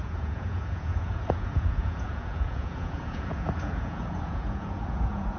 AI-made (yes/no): yes